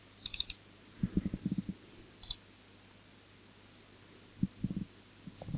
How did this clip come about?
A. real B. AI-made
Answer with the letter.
A